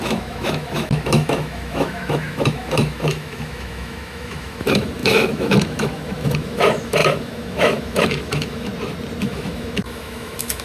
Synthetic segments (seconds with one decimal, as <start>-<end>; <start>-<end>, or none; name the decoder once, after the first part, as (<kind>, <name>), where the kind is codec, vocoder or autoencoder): 0.0-8.7 (autoencoder, DAC-VAE); 9.2-10.6